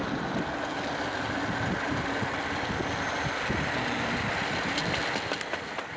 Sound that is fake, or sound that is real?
real